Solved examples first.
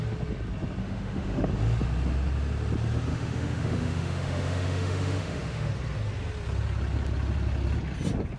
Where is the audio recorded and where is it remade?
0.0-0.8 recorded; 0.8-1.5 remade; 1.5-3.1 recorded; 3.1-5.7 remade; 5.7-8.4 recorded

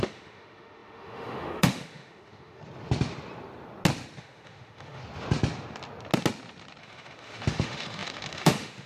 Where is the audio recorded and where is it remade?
0.0-2.6 remade; 2.6-4.2 recorded; 4.2-5.0 remade; 5.0-6.8 recorded; 6.8-8.9 remade

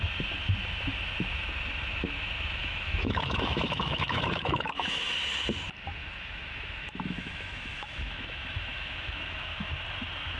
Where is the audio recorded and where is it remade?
0.0-2.6 recorded; 2.6-5.0 remade; 5.0-6.0 recorded; 6.0-9.7 remade; 9.7-10.4 recorded

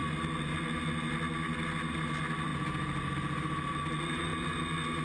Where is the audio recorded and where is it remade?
0.0-5.0 recorded

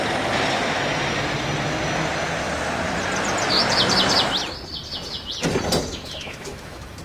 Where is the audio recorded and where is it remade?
0.0-5.9 recorded; 5.9-7.0 remade

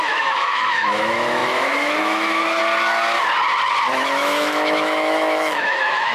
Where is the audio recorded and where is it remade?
0.0-2.6 remade; 2.6-3.9 recorded; 3.9-6.1 remade

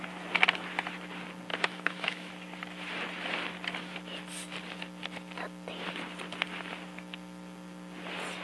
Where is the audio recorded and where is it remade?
0.0-1.5 recorded; 1.5-2.3 remade; 2.3-8.4 recorded

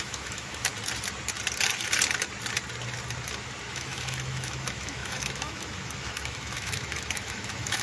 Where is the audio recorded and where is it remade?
0.0-0.7 remade; 0.7-3.7 recorded; 3.7-7.8 remade